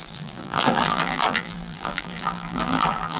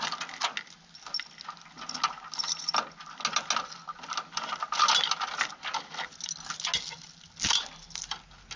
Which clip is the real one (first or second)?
second